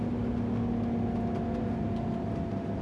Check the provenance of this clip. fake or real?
real